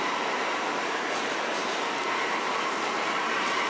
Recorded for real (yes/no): no